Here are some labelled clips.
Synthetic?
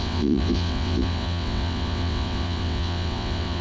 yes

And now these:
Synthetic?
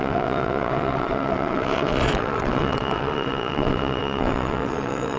yes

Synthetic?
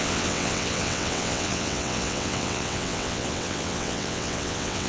yes